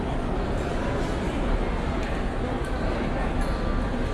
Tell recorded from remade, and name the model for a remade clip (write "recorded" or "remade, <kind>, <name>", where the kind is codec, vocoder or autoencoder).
recorded